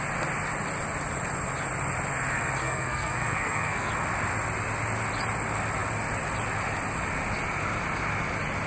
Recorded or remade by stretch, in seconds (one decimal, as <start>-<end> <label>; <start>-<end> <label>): 0.0-2.6 recorded; 2.6-3.9 remade; 3.9-8.7 recorded